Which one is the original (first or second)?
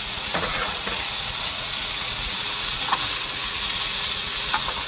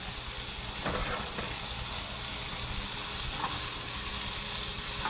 second